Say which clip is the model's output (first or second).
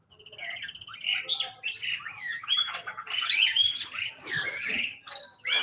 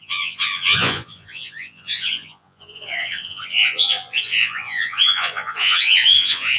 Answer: second